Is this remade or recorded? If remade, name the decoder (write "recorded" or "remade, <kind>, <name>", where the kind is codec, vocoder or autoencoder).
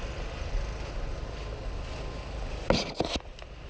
recorded